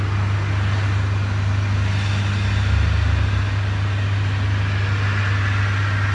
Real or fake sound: real